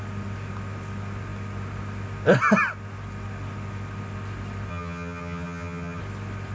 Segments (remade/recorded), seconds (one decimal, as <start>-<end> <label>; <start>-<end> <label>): 0.0-4.7 recorded; 4.7-6.0 remade; 6.0-6.5 recorded